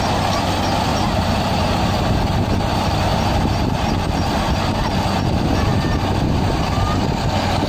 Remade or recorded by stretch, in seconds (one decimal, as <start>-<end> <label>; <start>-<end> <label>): 0.0-0.9 recorded; 0.9-1.9 remade; 1.9-3.1 recorded; 3.1-3.9 remade; 3.9-7.7 recorded